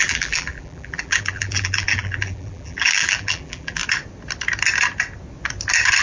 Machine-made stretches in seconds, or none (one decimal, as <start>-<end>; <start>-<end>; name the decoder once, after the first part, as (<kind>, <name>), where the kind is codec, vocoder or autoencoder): 0.0-3.8 (vocoder, BigVGAN v2)